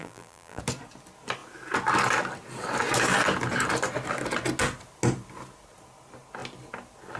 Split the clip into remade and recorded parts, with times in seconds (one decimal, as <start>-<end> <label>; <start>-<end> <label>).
0.0-0.6 remade; 0.6-7.2 recorded